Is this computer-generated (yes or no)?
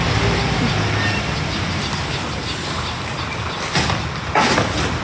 no